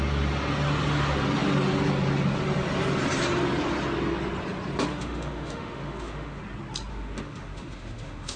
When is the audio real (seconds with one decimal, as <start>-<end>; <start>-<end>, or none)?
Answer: 0.0-4.9; 6.4-6.9